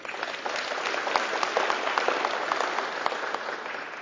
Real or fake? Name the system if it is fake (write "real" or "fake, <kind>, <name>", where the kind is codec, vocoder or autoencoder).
real